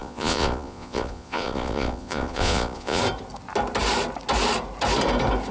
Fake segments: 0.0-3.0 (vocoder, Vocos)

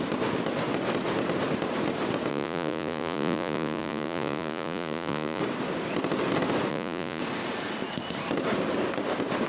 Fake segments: 2.3-5.4 (vocoder, Vocos); 6.7-7.2

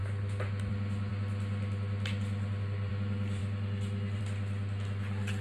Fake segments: none

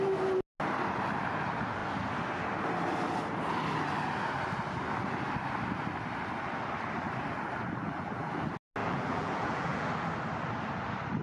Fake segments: 7.8-8.4 (vocoder, BigVGAN v2); 8.8-9.9

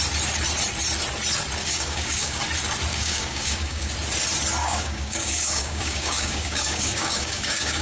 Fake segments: 1.6-2.4 (codec, DAC); 2.9-3.9; 4.6-7.8

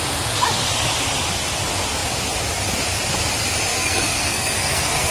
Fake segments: 3.7-5.1 (codec, SNAC)